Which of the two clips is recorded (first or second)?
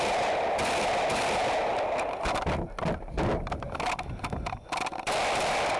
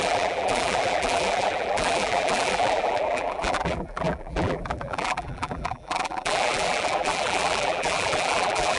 first